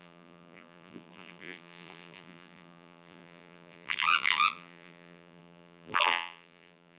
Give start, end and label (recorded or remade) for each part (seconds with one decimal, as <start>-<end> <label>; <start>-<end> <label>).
0.0-7.0 remade